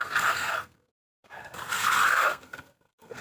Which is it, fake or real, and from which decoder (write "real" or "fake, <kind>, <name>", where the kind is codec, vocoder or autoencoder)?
fake, codec, SNAC